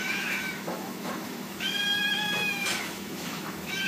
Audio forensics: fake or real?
fake